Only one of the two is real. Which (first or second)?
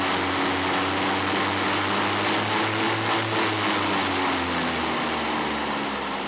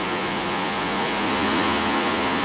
first